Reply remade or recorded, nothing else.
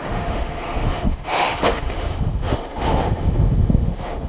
remade